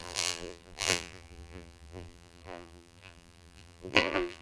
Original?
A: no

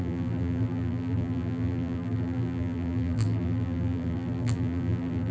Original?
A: no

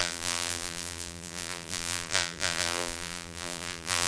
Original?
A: no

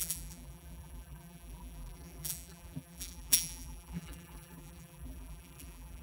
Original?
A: no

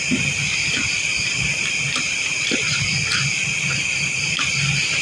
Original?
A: no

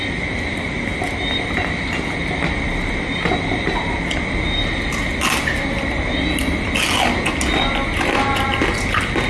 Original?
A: yes